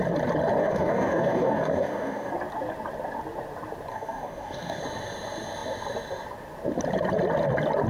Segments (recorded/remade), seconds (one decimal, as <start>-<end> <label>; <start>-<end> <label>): 0.0-0.6 recorded; 0.6-2.3 remade; 2.3-3.9 recorded; 3.9-4.8 remade; 4.8-7.9 recorded